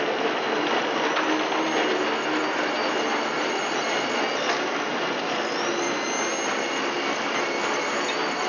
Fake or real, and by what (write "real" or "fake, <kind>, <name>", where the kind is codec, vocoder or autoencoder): real